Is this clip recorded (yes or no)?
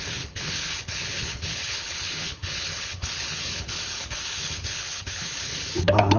no